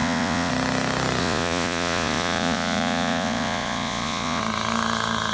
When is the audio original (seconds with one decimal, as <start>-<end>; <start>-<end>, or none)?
0.5-1.2; 4.4-5.3